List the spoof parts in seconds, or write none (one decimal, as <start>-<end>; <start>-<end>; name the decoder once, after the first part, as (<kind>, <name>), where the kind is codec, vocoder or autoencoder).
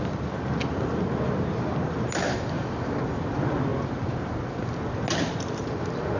none